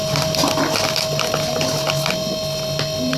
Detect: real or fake real